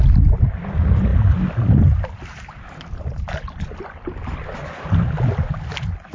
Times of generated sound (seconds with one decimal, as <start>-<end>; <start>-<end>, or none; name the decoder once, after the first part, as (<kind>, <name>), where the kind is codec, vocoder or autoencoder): none